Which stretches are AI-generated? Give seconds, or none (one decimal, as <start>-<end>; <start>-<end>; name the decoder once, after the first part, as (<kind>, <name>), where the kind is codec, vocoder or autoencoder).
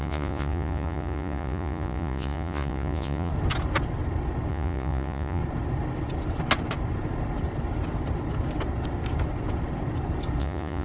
0.0-3.3 (vocoder, Vocos); 4.5-5.4; 10.4-10.8